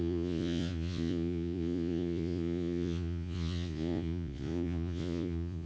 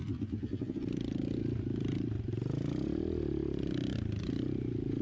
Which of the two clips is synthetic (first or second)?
first